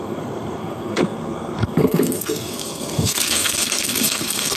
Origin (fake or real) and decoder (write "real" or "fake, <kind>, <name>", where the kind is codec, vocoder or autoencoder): fake, codec, SNAC